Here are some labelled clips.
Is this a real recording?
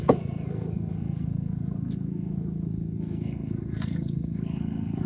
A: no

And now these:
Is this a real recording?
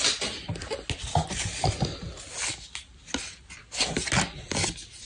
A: yes